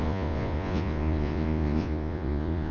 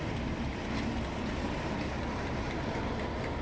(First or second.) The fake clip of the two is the first